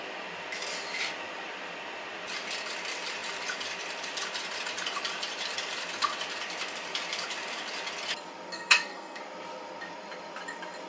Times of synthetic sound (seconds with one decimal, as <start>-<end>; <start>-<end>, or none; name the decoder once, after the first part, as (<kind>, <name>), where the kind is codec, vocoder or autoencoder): 8.5-9.2 (codec, SNAC)